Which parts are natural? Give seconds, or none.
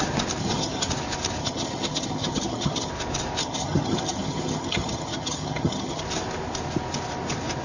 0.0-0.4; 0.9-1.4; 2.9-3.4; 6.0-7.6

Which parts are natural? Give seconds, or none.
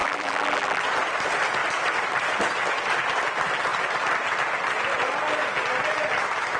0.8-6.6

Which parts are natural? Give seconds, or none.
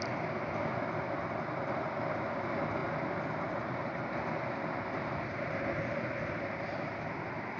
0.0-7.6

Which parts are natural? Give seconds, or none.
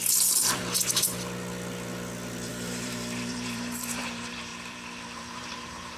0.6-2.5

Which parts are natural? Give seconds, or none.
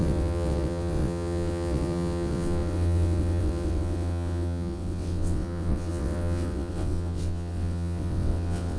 none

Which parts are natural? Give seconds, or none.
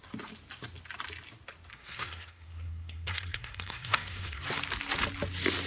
0.0-1.7; 4.4-5.7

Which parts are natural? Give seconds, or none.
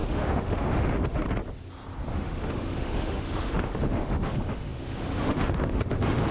1.2-2.1